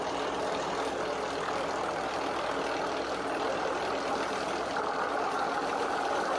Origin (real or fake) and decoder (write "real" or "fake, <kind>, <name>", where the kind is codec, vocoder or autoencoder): real